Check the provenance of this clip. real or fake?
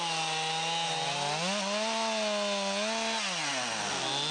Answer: real